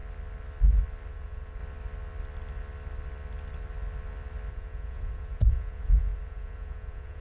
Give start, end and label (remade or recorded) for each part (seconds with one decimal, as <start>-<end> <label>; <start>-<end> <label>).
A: 0.0-1.1 recorded; 1.1-1.6 remade; 1.6-4.5 recorded; 4.5-7.2 remade

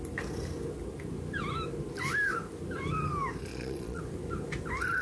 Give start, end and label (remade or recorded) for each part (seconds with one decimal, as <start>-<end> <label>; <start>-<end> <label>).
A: 0.0-3.5 recorded; 3.5-4.0 remade; 4.0-5.0 recorded

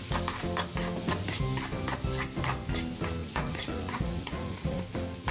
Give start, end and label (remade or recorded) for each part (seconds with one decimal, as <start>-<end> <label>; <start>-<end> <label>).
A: 0.0-3.2 recorded; 3.2-4.8 remade; 4.8-5.3 recorded

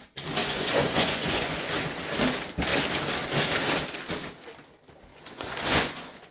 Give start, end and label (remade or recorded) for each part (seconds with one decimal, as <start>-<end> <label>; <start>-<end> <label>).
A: 0.0-0.4 recorded; 0.4-1.8 remade; 1.8-5.1 recorded; 5.1-6.3 remade

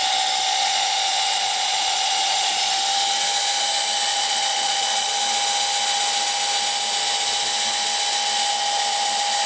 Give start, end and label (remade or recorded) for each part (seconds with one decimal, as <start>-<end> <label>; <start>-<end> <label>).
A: 0.0-0.6 recorded; 0.6-2.7 remade; 2.7-4.1 recorded; 4.1-5.1 remade; 5.1-9.5 recorded